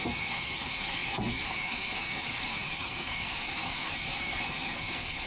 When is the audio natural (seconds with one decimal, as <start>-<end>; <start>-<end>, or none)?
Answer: none